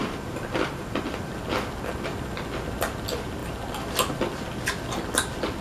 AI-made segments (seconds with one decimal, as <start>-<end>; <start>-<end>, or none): none